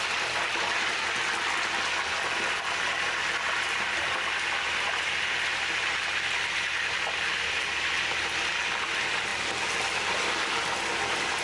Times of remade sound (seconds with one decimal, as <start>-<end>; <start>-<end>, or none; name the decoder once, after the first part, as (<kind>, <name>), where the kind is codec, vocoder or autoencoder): none

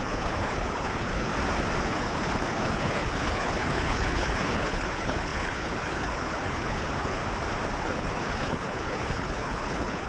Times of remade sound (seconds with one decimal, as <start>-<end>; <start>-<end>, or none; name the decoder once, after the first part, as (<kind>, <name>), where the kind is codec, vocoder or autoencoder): 0.0-1.3 (codec, HILCodec); 1.8-7.2; 7.8-10.1

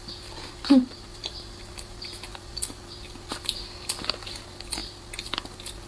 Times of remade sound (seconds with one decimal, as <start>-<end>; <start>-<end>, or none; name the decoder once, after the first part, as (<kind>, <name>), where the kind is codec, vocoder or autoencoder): none

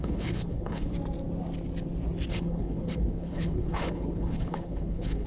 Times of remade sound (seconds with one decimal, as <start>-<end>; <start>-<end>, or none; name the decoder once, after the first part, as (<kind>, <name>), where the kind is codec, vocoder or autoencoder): 0.0-0.9 (codec, HILCodec); 2.3-5.3

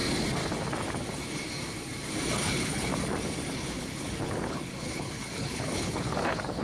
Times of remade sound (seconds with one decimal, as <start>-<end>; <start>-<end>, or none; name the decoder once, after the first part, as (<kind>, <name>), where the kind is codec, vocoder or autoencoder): 2.3-2.9 (codec, HILCodec); 3.5-6.6

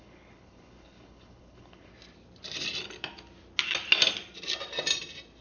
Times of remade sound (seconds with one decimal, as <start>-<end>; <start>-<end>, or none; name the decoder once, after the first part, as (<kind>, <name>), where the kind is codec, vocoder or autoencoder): 0.0-1.9 (codec, HILCodec)